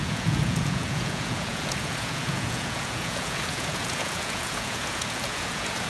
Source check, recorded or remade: remade